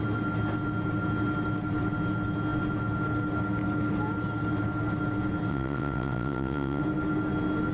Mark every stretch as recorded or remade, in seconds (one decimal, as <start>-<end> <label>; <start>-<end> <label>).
0.0-5.5 recorded; 5.5-6.8 remade; 6.8-7.7 recorded